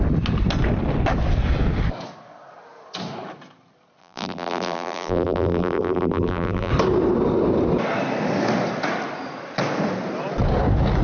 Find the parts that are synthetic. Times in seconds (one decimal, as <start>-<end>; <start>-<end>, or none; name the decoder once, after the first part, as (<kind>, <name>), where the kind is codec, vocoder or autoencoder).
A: 4.0-6.7 (vocoder, BigVGAN v2)